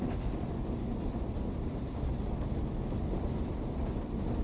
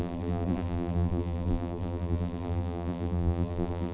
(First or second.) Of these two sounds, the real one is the first